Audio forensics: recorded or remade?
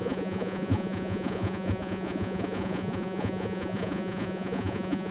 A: remade